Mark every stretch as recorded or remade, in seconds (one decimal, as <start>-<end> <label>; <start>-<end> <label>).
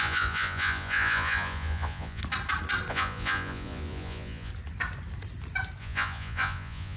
0.0-2.2 remade; 2.2-2.9 recorded; 2.9-4.5 remade; 4.5-5.8 recorded; 5.8-7.0 remade